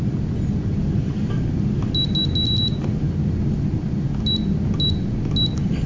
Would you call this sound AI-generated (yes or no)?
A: no